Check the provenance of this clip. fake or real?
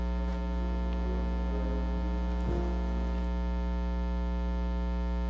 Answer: real